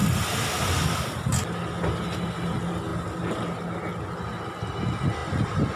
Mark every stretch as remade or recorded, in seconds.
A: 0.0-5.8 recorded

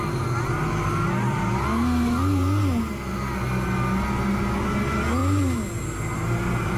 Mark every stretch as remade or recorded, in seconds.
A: 0.0-6.8 recorded

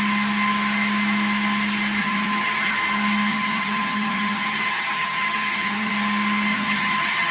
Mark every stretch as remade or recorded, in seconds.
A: 0.0-2.0 recorded; 2.0-2.7 remade; 2.7-3.3 recorded; 3.3-5.9 remade; 5.9-6.5 recorded; 6.5-7.3 remade

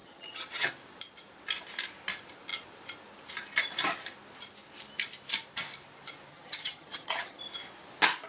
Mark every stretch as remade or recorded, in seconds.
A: 0.0-0.7 remade; 0.7-6.3 recorded; 6.3-7.4 remade; 7.4-8.3 recorded

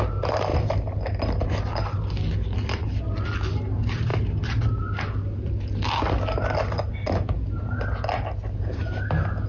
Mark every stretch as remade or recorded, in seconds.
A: 0.0-9.5 recorded

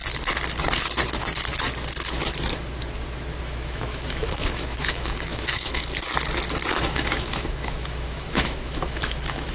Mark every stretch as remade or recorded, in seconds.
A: 0.0-3.4 recorded; 3.4-5.9 remade; 5.9-6.8 recorded; 6.8-9.5 remade

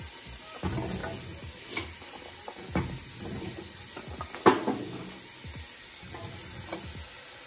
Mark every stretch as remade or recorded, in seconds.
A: 0.0-7.5 recorded

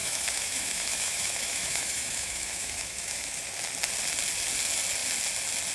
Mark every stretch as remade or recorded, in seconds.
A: 0.0-3.4 remade; 3.4-5.7 recorded